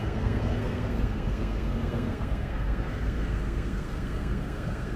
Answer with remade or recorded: remade